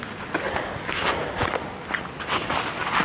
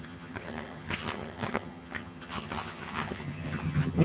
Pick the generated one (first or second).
second